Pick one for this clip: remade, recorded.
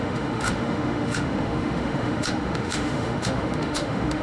remade